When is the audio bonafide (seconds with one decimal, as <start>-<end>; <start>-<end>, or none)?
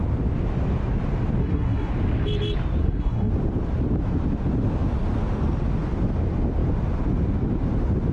0.0-1.4; 1.9-2.8; 3.3-8.1